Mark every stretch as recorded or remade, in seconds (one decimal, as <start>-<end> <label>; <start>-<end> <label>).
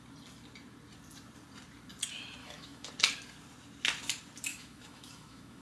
0.0-2.4 recorded; 2.4-2.9 remade; 2.9-4.5 recorded; 4.5-5.6 remade